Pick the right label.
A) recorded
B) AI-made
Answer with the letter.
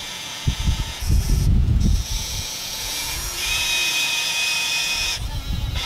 B